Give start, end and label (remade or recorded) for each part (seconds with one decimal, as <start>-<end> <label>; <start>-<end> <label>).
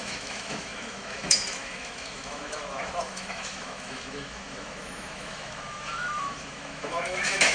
0.0-7.5 remade